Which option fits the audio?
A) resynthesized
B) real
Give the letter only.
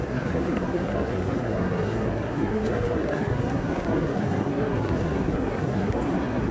A